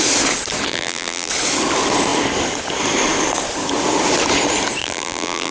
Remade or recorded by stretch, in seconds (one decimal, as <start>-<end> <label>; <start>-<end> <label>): 0.0-0.7 recorded; 0.7-1.3 remade; 1.3-4.8 recorded; 4.8-5.5 remade